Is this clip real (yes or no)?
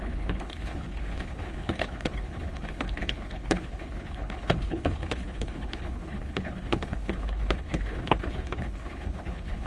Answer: no